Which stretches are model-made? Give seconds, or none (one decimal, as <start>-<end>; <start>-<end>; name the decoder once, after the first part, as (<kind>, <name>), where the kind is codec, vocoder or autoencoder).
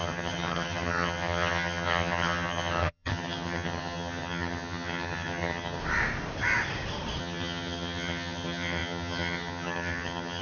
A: 0.0-5.8 (vocoder, HiFi-GAN); 7.2-10.4